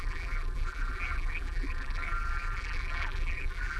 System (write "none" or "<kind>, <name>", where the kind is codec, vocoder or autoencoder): vocoder, BigVGAN v2